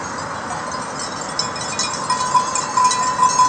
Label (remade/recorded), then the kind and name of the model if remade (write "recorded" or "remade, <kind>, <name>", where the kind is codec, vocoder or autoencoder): recorded